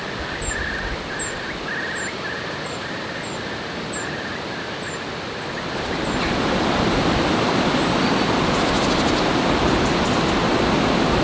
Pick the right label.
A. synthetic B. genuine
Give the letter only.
B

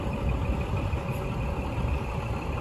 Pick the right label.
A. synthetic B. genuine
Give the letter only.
B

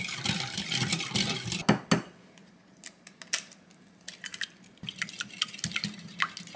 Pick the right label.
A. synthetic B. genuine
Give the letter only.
B